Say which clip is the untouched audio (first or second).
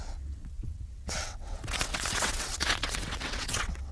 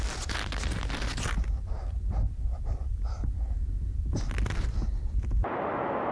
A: second